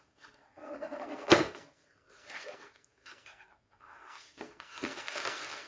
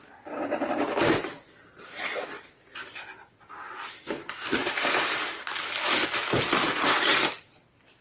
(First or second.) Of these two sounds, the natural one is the second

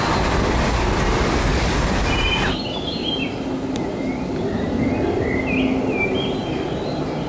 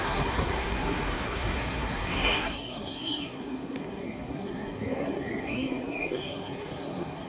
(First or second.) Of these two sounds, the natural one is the first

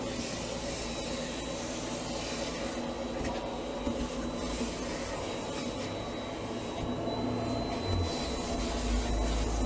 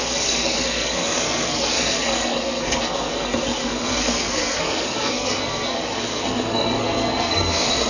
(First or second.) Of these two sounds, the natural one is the first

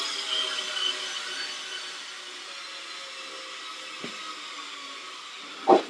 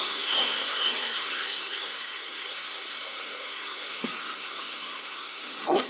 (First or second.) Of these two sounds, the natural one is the first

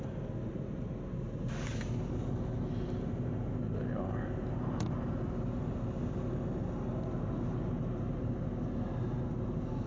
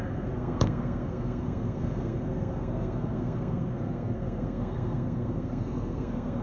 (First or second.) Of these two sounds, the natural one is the first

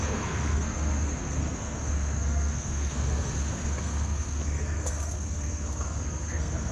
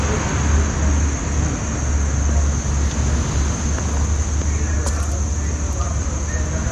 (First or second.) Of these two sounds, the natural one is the second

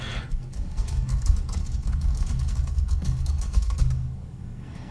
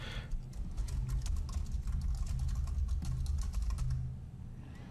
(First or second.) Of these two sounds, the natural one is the second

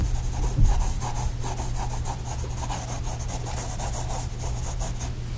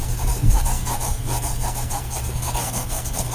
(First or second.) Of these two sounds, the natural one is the first